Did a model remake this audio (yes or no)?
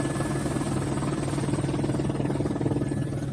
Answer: no